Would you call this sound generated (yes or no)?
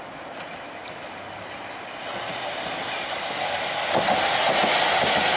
no